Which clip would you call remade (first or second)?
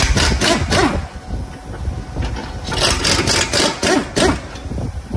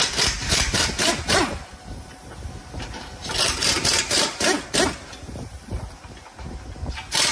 second